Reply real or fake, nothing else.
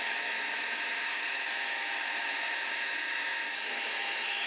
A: fake